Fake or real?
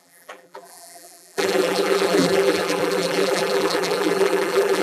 fake